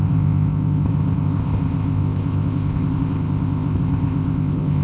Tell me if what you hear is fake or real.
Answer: fake